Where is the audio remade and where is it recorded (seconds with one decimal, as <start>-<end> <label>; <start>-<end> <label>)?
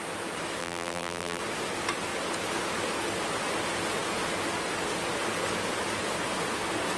0.0-0.6 recorded; 0.6-1.4 remade; 1.4-7.0 recorded